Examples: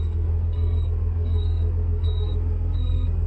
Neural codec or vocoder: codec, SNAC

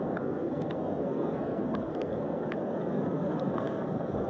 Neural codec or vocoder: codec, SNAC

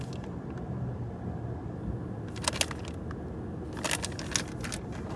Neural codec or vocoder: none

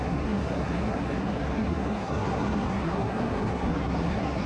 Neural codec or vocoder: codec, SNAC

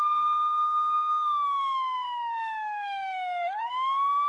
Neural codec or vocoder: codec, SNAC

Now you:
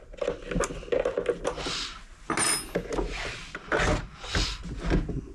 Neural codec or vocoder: none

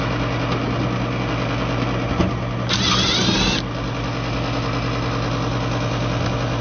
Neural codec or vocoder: none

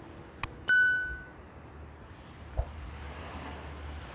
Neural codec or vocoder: none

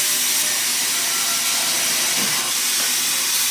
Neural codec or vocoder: none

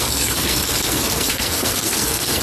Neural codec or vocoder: codec, SNAC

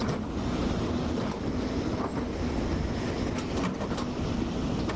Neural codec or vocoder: none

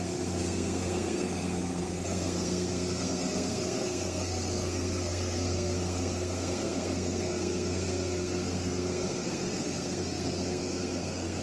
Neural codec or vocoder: codec, SNAC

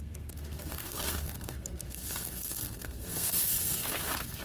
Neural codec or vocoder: codec, SNAC